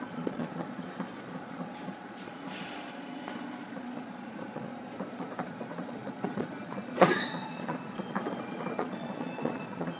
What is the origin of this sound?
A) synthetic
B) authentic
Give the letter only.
A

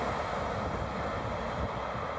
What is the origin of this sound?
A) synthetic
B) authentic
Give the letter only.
B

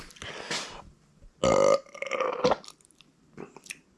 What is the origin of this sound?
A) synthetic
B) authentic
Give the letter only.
B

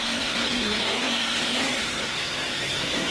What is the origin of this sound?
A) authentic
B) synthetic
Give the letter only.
B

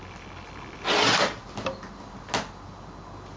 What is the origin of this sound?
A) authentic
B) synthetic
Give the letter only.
A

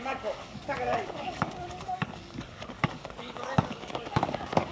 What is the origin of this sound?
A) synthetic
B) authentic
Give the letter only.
A